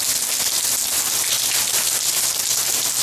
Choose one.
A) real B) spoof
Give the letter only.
A